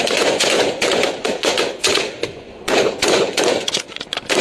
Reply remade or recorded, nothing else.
remade